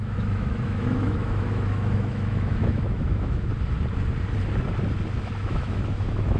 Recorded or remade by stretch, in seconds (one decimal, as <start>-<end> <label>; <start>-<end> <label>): 0.0-3.5 remade; 3.5-5.2 recorded; 5.2-6.4 remade